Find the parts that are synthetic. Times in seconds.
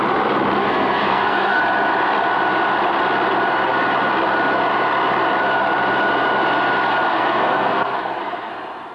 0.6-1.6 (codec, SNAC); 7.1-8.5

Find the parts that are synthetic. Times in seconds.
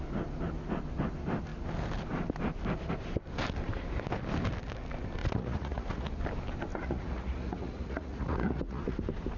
5.2-6.1 (vocoder, Vocos); 6.7-9.0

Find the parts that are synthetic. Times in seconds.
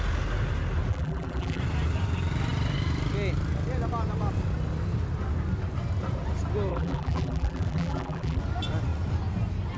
0.9-1.6 (vocoder, BigVGAN v2); 6.7-8.4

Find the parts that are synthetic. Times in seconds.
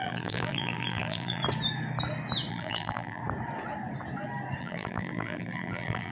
0.0-1.4 (vocoder, BigVGAN v2); 2.5-3.2; 4.6-6.1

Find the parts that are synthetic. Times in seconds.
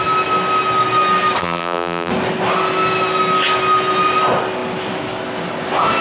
1.4-2.1 (vocoder, BigVGAN v2)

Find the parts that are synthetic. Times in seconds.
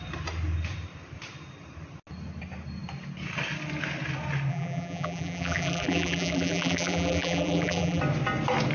4.5-8.0 (vocoder, BigVGAN v2)